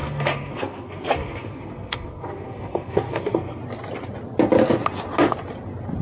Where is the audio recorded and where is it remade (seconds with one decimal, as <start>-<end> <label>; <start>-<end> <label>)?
0.0-3.6 remade; 3.6-6.0 recorded